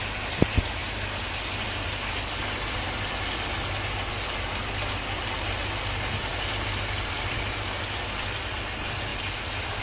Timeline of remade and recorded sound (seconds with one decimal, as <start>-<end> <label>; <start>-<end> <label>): 0.0-9.8 recorded